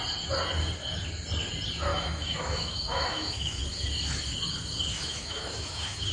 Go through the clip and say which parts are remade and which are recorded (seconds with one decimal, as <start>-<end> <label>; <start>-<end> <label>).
0.0-1.9 recorded; 1.9-3.6 remade; 3.6-4.9 recorded; 4.9-6.1 remade